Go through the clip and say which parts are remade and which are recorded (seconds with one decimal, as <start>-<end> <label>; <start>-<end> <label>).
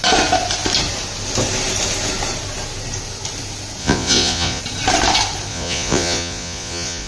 0.0-3.8 recorded; 3.8-4.6 remade; 4.6-5.5 recorded; 5.5-7.1 remade